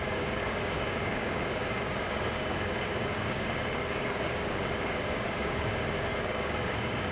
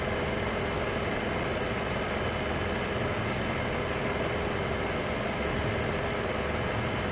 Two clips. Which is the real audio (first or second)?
second